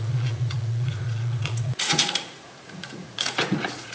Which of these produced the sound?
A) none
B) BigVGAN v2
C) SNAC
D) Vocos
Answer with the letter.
D